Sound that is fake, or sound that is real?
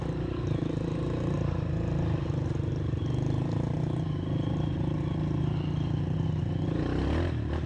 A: real